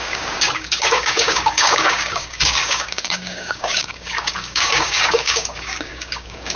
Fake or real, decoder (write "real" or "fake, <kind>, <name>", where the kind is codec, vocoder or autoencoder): fake, codec, DAC